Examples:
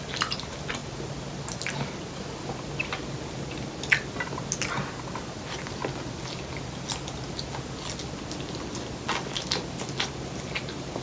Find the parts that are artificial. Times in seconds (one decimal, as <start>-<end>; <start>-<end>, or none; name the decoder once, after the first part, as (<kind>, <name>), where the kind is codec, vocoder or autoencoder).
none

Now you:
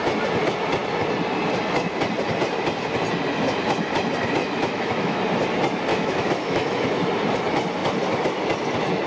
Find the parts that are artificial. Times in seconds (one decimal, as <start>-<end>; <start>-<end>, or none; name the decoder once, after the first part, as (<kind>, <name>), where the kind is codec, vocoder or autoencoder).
4.4-5.2 (autoencoder, DAC-VAE); 5.9-7.1

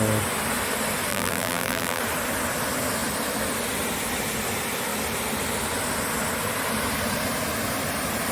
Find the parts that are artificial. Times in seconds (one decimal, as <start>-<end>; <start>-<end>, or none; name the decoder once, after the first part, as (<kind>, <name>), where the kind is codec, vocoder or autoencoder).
1.1-2.0 (vocoder, BigVGAN v2)